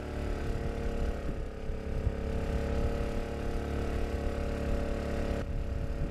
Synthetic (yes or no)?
no